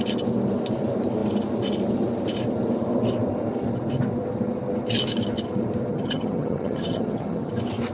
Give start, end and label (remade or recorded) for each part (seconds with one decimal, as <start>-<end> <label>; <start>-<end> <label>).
0.0-5.9 recorded; 5.9-7.5 remade; 7.5-7.9 recorded